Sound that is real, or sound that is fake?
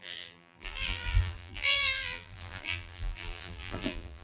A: fake